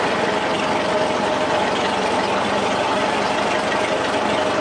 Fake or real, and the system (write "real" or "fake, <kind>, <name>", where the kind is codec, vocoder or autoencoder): real